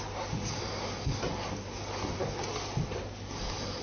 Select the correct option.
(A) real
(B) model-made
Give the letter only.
A